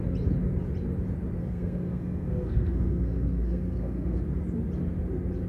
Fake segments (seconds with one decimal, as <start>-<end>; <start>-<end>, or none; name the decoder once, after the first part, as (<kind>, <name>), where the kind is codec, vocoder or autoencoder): 1.4-4.2 (codec, SNAC)